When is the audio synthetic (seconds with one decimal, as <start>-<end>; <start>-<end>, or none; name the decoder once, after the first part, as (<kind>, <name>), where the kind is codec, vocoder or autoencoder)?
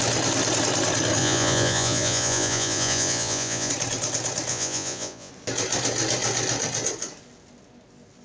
1.2-3.7 (vocoder, Vocos); 4.5-5.3